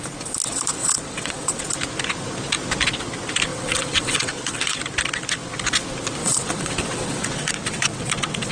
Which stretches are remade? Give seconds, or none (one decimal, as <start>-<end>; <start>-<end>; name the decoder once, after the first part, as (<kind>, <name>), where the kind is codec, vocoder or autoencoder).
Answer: 0.8-1.6 (vocoder, WaveNeXt); 3.5-4.8; 6.2-8.1